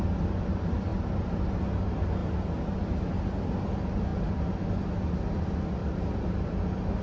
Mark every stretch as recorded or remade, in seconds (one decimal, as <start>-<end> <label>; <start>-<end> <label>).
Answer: 0.0-5.8 recorded; 5.8-6.6 remade; 6.6-7.0 recorded